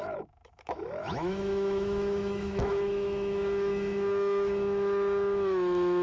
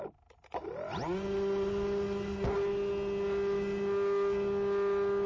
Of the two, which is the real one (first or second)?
second